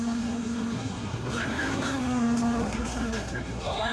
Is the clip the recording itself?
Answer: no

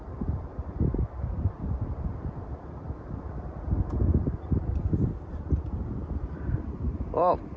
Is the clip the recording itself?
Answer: no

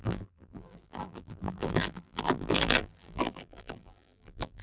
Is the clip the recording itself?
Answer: no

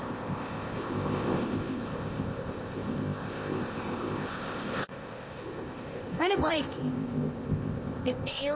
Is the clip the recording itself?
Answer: no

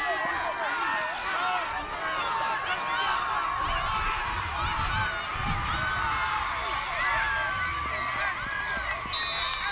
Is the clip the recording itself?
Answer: yes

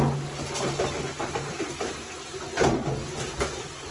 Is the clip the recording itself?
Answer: yes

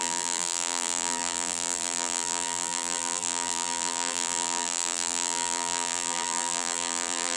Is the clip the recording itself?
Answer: no